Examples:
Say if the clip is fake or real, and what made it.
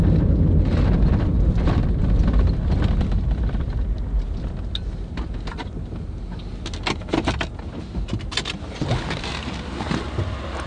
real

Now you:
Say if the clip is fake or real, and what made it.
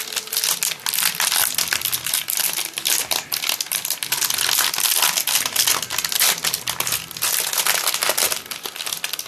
real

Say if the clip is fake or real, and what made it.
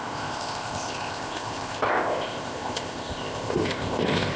fake, codec, ZipCodec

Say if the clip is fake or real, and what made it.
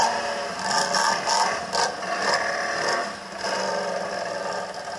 real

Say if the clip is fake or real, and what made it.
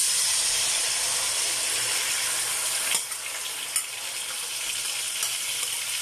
real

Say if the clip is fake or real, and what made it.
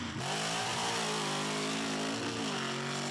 real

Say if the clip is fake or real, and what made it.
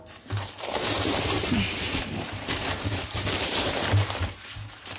fake, vocoder, BigVGAN v2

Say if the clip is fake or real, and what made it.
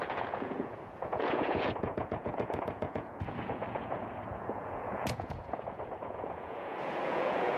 fake, vocoder, Vocos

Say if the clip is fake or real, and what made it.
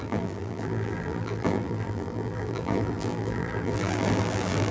fake, vocoder, BigVGAN v2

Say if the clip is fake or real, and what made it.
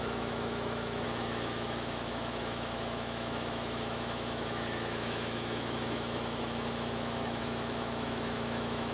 fake, autoencoder, DAC-VAE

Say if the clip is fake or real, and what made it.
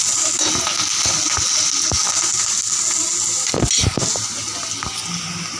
real